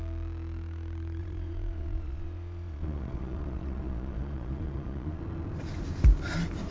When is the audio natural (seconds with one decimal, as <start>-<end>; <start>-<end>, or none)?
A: 0.0-1.2; 5.2-6.7